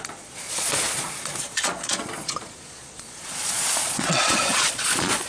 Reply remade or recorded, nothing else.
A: remade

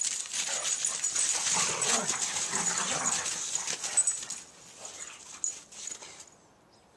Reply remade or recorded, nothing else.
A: recorded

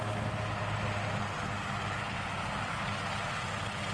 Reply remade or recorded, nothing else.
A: recorded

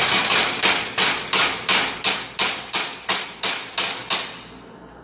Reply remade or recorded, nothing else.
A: recorded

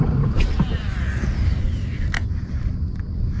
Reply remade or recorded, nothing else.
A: recorded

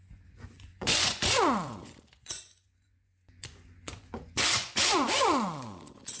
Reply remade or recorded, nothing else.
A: remade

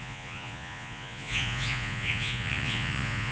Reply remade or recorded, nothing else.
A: remade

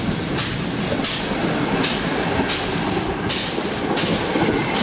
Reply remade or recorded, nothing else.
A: recorded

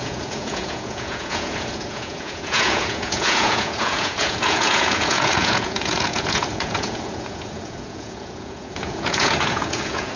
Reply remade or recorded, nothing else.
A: remade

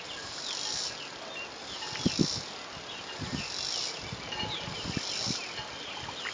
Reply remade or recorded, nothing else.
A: recorded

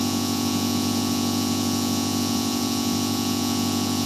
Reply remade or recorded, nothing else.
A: remade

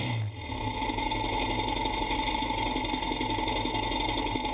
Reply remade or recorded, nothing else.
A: recorded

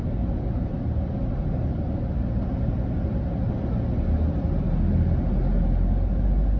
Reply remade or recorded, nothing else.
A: recorded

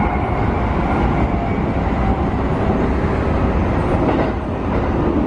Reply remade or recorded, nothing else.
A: recorded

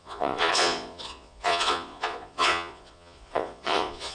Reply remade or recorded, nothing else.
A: remade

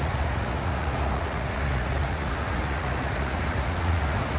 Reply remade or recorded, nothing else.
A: remade